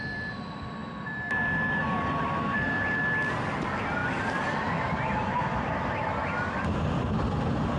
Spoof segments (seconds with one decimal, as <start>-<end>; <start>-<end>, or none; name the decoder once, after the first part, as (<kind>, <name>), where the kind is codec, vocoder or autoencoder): none